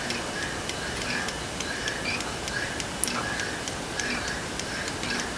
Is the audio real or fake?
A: real